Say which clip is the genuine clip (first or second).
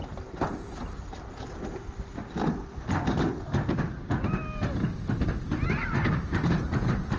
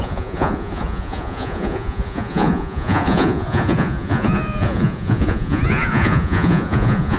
first